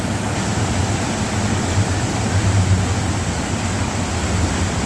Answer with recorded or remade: recorded